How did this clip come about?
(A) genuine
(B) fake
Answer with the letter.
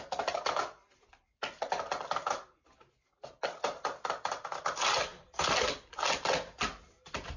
A